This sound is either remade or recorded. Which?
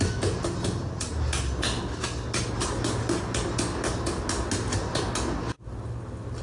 recorded